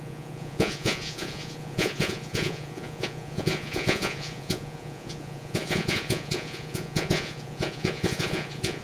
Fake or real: fake